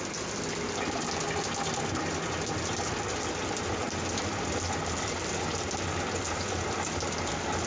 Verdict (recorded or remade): recorded